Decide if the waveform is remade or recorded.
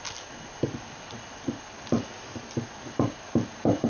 recorded